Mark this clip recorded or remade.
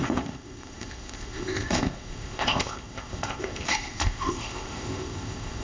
remade